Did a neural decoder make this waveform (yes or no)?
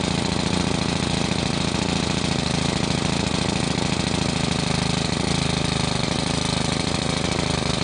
no